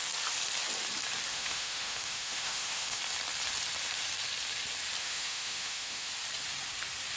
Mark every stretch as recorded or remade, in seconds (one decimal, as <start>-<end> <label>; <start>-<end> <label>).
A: 0.0-1.3 recorded; 1.3-3.0 remade; 3.0-5.0 recorded; 5.0-6.1 remade; 6.1-7.2 recorded

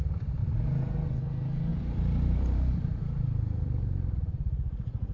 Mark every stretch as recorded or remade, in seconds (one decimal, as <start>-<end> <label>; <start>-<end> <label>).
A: 0.0-1.7 recorded; 1.7-5.1 remade

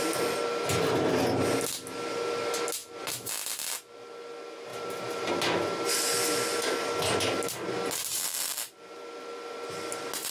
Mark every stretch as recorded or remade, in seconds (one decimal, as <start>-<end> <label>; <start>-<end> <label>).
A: 0.0-4.7 recorded; 4.7-5.3 remade; 5.3-8.1 recorded; 8.1-8.7 remade; 8.7-10.3 recorded

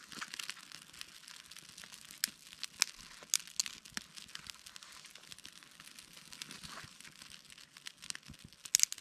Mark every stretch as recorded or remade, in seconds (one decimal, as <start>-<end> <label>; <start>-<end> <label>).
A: 0.0-9.0 recorded